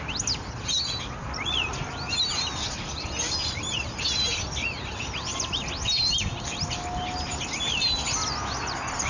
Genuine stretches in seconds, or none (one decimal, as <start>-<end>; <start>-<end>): 0.0-9.1